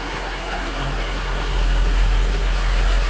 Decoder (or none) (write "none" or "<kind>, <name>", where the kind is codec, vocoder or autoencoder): codec, SNAC